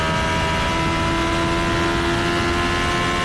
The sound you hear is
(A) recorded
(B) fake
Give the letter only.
A